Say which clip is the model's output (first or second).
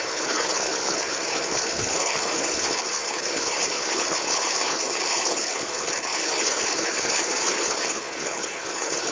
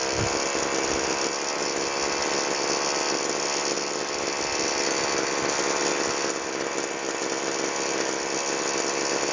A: first